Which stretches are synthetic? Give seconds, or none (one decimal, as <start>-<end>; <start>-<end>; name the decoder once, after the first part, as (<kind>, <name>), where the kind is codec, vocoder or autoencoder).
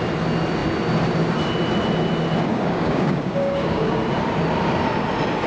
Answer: 2.5-4.0 (codec, DAC)